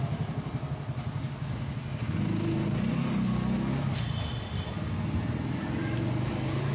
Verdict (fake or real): real